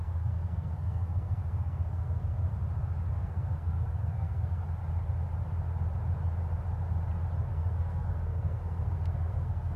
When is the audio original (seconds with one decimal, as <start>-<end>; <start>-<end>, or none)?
2.5-3.1; 4.6-7.4